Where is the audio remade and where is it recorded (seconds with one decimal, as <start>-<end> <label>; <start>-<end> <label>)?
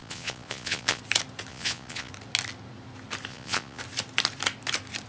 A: 0.0-1.0 remade; 1.0-1.5 recorded; 1.5-2.1 remade; 2.1-3.3 recorded; 3.3-3.8 remade; 3.8-5.1 recorded